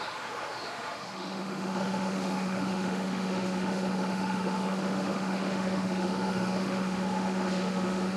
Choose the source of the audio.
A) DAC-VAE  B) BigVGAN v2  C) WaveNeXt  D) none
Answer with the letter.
A